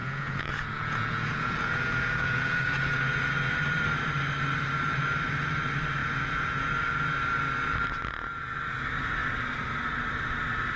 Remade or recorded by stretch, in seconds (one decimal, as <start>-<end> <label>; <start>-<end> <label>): 0.0-3.5 remade; 3.5-6.0 recorded; 6.0-6.7 remade; 6.7-10.8 recorded